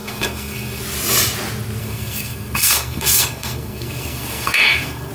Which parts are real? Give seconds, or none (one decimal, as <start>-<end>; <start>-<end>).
0.8-1.8

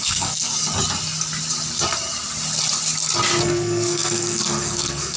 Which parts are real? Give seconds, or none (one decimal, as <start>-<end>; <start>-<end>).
0.5-3.4

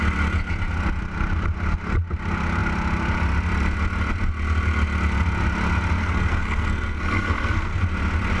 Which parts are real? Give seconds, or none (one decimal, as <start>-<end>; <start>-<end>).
0.0-6.0; 7.8-8.4